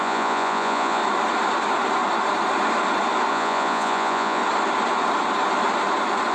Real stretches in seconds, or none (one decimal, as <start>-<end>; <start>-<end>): 1.0-3.3; 4.4-6.3